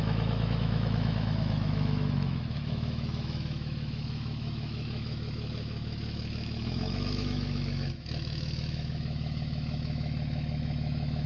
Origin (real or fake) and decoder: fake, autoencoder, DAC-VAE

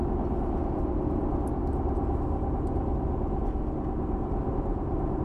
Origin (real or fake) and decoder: real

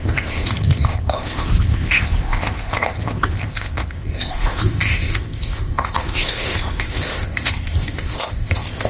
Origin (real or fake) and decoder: fake, codec, ZipCodec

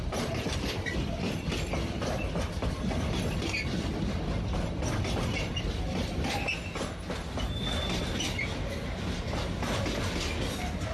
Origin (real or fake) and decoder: real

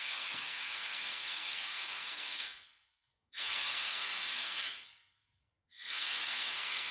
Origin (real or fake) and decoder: fake, codec, SNAC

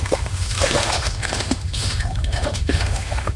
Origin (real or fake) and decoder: fake, autoencoder, DAC-VAE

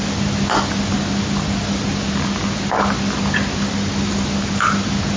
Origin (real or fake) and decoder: real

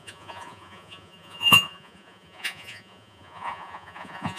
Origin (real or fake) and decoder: fake, vocoder, Vocos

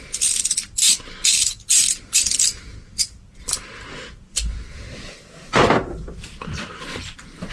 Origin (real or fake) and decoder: fake, vocoder, BigVGAN v2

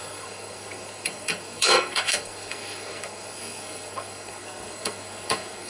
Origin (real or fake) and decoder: fake, codec, SNAC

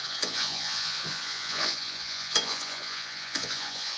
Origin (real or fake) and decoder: fake, vocoder, Vocos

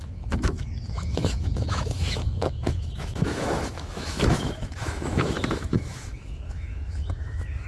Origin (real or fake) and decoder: fake, autoencoder, DAC-VAE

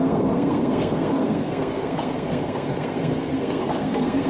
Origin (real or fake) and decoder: fake, codec, SNAC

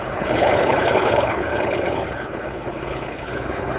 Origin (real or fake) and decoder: fake, codec, HILCodec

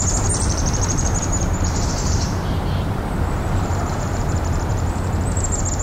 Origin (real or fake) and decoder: fake, vocoder, BigVGAN v2